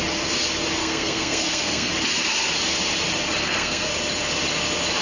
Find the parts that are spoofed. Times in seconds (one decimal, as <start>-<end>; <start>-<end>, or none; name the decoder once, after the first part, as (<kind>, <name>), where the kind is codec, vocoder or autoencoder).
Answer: 0.8-1.9 (codec, SNAC); 3.4-3.9